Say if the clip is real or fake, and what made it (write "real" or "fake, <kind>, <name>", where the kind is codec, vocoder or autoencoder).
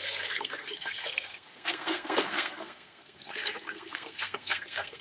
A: fake, codec, SNAC